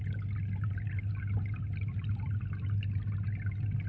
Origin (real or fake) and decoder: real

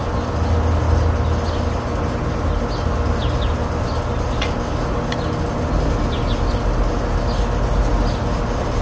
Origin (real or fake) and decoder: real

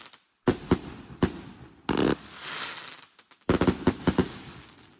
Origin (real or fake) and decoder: real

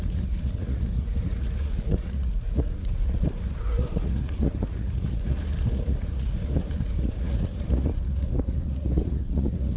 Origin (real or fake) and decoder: fake, vocoder, Vocos